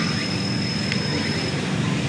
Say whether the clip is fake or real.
real